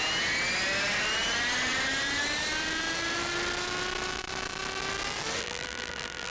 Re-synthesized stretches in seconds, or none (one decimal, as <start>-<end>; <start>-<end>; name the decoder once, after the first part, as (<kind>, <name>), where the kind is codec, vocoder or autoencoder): 5.4-6.3 (vocoder, BigVGAN v2)